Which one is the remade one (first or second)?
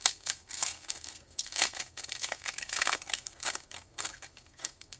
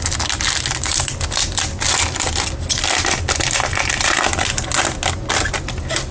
first